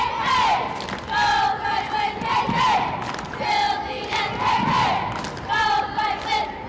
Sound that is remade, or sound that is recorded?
recorded